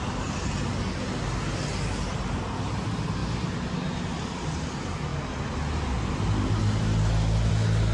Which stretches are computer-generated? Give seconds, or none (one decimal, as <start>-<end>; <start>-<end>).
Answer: none